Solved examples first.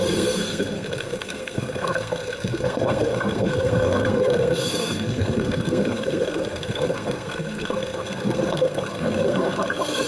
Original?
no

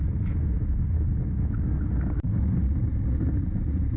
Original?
yes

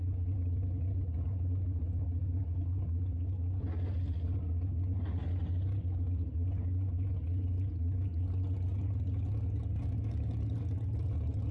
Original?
yes